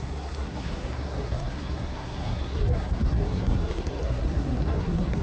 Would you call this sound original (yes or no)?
no